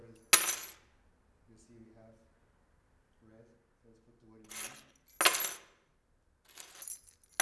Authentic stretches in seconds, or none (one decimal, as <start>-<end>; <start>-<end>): 0.0-7.4